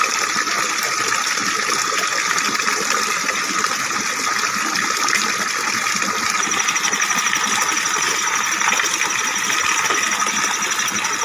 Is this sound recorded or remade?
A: recorded